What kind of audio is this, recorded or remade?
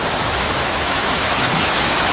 remade